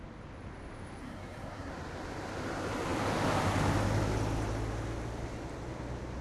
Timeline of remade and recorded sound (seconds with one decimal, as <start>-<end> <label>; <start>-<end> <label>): 0.0-1.0 recorded; 1.0-1.7 remade; 1.7-6.2 recorded